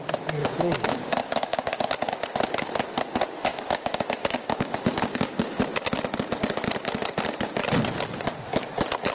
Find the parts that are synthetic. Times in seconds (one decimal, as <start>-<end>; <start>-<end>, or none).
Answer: 0.4-1.8; 3.5-5.6